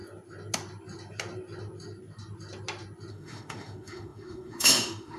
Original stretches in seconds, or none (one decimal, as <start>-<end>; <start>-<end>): 0.0-3.1